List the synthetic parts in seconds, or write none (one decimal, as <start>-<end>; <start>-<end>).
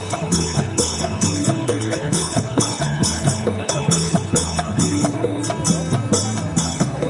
0.0-5.4; 6.6-7.1